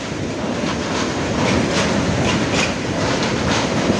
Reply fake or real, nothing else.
fake